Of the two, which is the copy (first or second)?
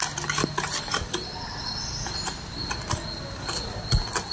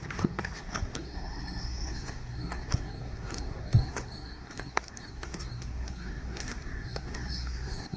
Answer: second